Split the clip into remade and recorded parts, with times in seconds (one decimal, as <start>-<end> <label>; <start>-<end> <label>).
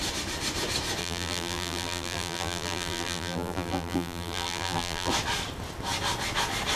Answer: 0.0-1.0 recorded; 1.0-5.1 remade; 5.1-6.8 recorded